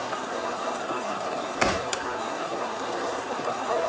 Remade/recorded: remade